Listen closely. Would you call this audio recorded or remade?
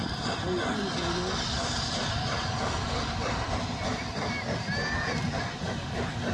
recorded